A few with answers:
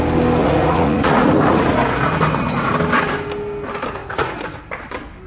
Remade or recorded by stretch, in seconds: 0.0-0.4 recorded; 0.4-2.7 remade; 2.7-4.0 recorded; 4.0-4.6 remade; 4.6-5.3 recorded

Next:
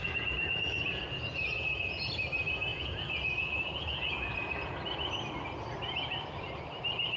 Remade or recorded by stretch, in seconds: 0.0-2.1 remade; 2.1-2.7 recorded; 2.7-4.7 remade; 4.7-7.2 recorded

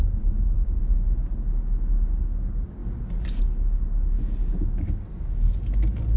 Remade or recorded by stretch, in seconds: 0.0-0.8 remade; 0.8-6.2 recorded